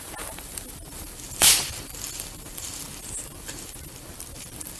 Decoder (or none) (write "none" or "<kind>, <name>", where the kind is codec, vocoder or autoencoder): vocoder, BigVGAN v2